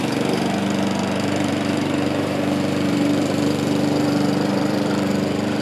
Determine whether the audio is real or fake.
fake